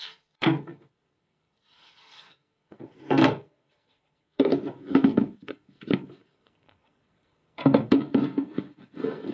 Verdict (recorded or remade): remade